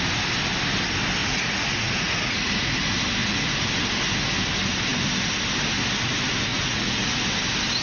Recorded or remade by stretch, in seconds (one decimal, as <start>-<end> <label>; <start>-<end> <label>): 0.0-1.2 recorded; 1.2-2.7 remade; 2.7-3.2 recorded; 3.2-3.7 remade; 3.7-6.5 recorded; 6.5-7.1 remade; 7.1-7.8 recorded